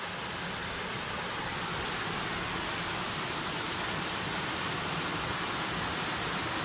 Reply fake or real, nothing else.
real